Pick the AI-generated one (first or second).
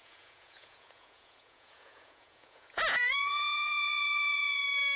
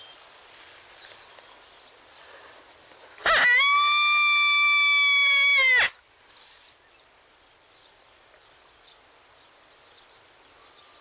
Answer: first